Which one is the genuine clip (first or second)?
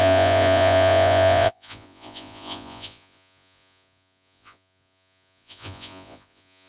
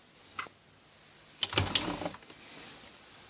second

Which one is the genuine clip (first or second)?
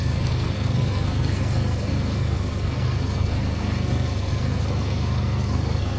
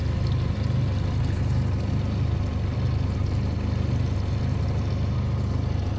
second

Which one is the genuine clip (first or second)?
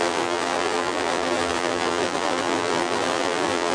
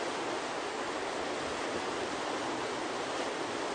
second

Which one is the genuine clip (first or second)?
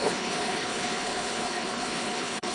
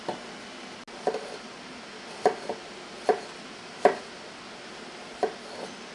second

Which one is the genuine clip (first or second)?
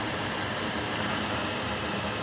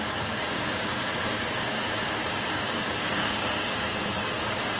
first